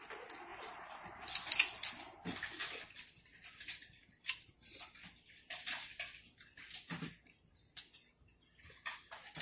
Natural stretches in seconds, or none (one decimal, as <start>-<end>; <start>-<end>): 0.0-0.5; 1.6-2.6; 7.5-9.4